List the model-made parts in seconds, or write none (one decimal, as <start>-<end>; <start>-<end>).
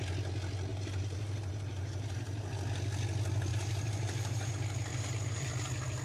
0.7-2.5; 3.5-4.5; 4.9-5.5